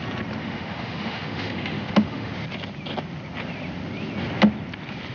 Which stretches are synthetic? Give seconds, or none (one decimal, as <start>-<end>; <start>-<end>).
0.4-2.3